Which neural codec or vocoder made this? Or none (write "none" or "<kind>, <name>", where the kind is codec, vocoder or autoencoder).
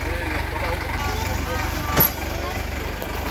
none